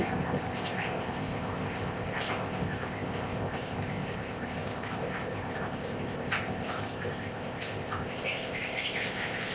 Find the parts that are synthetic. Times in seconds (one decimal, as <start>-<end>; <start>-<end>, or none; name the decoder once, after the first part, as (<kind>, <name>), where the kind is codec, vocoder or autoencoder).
0.0-9.5 (codec, ZipCodec)

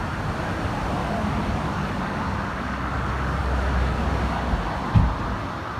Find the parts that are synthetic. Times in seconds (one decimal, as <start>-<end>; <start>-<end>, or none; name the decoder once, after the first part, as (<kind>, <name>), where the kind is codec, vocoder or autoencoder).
1.0-4.5 (codec, DAC)

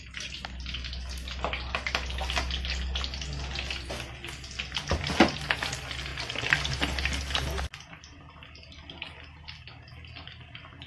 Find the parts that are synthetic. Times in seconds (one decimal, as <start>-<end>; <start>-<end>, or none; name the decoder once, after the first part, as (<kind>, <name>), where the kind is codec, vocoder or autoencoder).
none

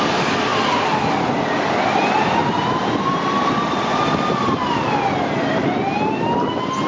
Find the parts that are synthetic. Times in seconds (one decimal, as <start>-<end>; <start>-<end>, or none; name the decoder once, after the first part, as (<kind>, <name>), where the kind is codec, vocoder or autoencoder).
none